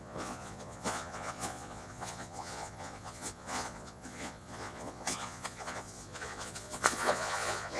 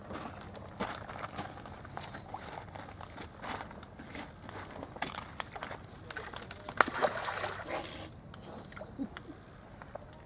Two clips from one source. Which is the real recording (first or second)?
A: second